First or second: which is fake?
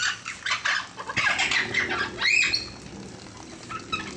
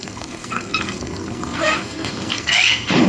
second